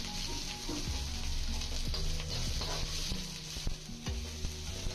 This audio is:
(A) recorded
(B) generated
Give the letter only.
A